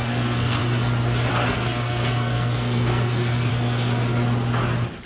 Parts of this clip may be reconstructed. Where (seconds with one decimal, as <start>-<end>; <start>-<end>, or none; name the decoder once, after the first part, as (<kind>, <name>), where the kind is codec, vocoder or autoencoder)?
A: 0.0-0.6 (codec, SNAC); 1.3-3.5